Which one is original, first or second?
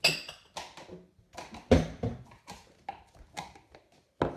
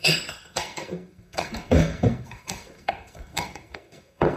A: first